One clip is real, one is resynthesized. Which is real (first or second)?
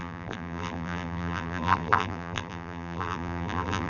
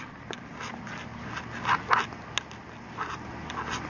second